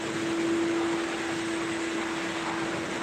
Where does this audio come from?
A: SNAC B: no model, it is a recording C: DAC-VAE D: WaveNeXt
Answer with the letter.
B